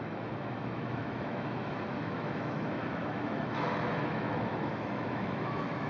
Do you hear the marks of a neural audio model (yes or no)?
yes